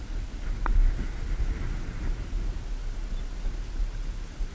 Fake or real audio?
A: real